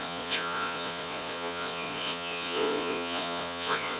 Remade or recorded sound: remade